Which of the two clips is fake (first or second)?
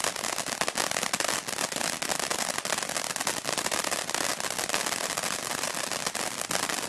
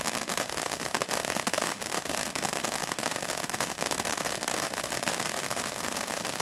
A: second